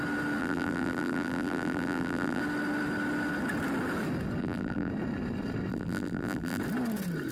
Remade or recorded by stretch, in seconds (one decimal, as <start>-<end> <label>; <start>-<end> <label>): 0.0-0.4 recorded; 0.4-2.4 remade; 2.4-4.4 recorded; 4.4-4.9 remade; 4.9-5.7 recorded; 5.7-6.6 remade; 6.6-7.3 recorded